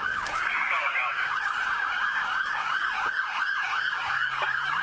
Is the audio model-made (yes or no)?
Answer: yes